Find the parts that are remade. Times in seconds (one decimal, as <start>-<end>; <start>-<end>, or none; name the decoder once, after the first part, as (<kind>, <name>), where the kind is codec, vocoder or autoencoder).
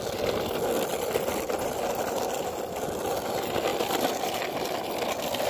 3.7-4.5 (vocoder, BigVGAN v2)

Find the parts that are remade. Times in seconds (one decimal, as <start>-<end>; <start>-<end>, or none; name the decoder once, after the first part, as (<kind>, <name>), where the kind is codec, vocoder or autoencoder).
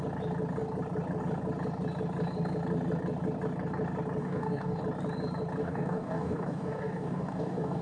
4.2-4.8 (codec, DAC); 5.6-7.8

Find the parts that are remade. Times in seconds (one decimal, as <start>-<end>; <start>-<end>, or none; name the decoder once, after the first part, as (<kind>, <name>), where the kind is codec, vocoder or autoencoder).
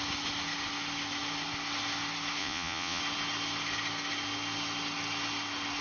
2.4-3.0 (vocoder, Vocos)